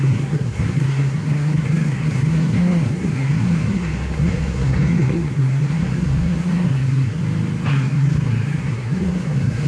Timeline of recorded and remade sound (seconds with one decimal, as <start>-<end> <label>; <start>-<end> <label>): 0.0-7.2 remade; 7.2-7.7 recorded; 7.7-9.7 remade